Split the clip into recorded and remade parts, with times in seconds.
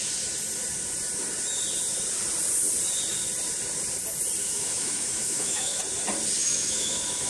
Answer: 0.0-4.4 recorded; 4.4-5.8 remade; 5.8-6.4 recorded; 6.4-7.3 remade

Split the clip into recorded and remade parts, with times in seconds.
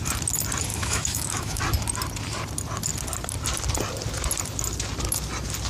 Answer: 0.0-0.7 recorded; 0.7-1.6 remade; 1.6-5.7 recorded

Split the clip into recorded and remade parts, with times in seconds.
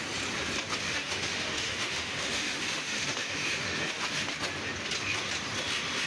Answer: 0.0-0.8 recorded; 0.8-4.0 remade; 4.0-6.1 recorded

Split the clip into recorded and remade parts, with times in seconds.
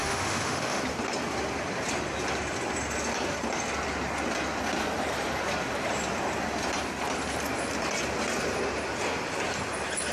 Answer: 0.0-0.8 remade; 0.8-10.1 recorded